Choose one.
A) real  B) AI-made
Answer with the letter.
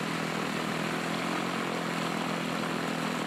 A